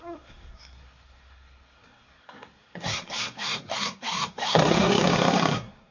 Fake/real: fake